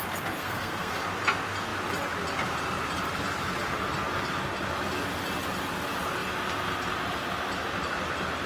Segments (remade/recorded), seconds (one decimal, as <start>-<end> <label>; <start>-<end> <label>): 0.0-0.4 recorded; 0.4-1.0 remade; 1.0-8.5 recorded